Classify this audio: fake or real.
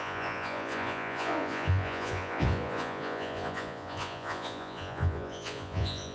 fake